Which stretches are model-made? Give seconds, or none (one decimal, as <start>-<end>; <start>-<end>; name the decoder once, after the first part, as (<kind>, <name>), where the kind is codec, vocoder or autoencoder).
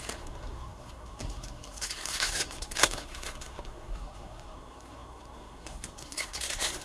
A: 0.0-6.8 (codec, SNAC)